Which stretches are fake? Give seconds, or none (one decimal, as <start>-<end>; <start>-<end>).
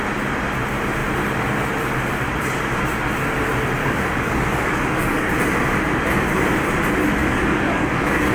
3.8-5.3; 7.2-8.3